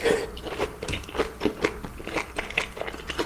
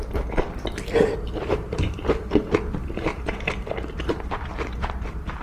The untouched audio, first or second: first